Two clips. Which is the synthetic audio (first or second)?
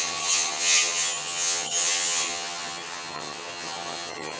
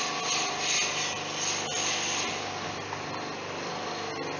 first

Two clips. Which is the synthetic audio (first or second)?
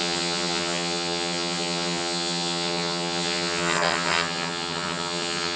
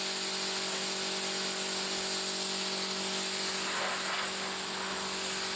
first